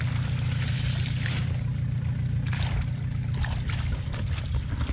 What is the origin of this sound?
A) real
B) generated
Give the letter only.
A